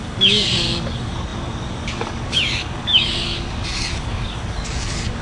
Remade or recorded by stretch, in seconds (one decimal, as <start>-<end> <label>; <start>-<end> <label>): 0.0-5.2 remade